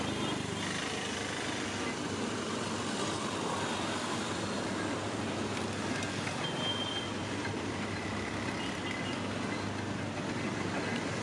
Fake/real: real